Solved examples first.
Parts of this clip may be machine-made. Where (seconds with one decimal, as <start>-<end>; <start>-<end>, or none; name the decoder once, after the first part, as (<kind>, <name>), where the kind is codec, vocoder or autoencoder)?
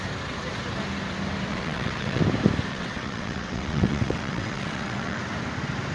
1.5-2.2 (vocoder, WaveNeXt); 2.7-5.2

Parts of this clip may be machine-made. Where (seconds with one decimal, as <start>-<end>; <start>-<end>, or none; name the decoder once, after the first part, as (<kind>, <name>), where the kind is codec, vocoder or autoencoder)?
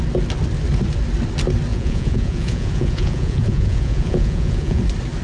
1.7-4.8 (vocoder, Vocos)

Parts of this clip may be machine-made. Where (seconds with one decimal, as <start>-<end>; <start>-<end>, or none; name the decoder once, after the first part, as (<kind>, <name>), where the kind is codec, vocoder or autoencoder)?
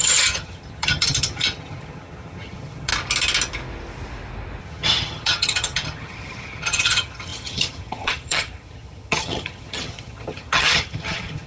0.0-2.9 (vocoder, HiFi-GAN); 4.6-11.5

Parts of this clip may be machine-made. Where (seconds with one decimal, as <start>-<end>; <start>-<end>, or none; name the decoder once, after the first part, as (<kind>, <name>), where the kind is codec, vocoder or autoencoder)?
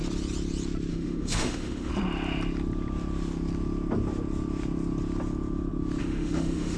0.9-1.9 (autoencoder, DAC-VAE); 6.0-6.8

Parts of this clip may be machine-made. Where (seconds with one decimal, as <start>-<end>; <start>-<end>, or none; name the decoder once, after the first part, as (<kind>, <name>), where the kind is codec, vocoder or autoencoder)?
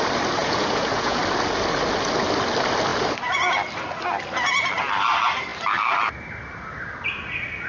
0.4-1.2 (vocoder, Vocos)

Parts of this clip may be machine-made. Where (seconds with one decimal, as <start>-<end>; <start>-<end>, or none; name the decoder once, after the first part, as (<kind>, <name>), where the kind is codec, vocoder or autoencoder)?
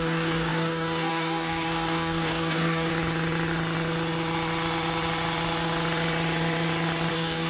0.0-2.9 (codec, DAC); 7.1-7.5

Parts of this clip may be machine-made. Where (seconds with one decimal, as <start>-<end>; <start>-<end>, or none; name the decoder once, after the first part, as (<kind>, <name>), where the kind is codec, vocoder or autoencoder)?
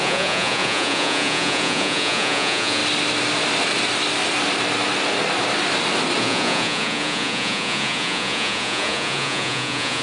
0.0-2.8 (vocoder, Vocos); 6.2-10.0